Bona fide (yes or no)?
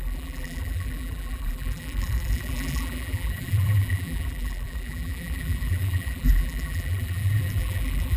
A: no